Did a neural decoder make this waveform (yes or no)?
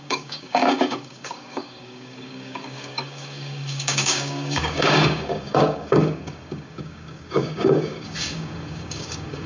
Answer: yes